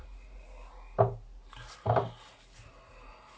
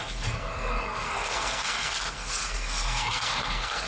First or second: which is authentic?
first